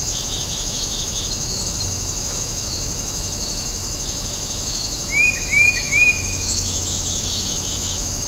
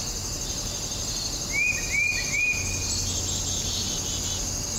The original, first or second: second